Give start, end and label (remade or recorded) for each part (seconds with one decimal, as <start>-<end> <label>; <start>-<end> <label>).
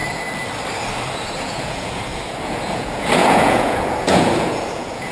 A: 0.0-1.1 recorded; 1.1-5.1 remade